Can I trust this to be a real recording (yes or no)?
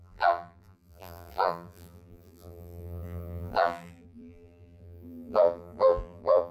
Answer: no